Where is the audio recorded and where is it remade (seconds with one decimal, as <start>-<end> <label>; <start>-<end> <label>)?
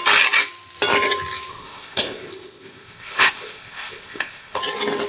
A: 0.0-1.5 recorded; 1.5-4.6 remade; 4.6-5.1 recorded